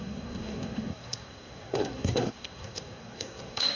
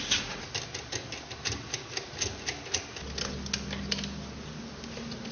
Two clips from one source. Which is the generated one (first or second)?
first